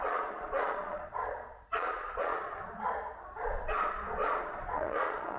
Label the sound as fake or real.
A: fake